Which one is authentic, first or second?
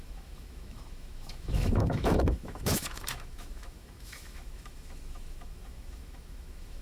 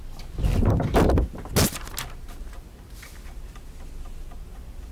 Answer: second